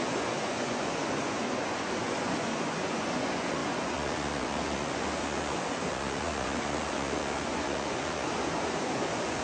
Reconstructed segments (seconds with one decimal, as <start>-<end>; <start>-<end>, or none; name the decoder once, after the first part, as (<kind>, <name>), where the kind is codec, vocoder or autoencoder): 0.0-9.4 (vocoder, Vocos)